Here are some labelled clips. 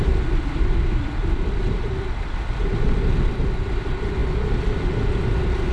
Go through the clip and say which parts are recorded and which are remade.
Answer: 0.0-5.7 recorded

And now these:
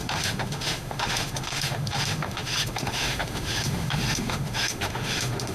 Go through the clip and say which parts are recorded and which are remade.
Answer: 0.0-5.5 remade